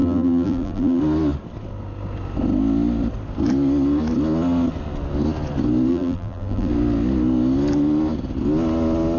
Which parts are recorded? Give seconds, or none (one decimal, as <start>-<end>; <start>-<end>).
1.0-5.9; 6.7-9.2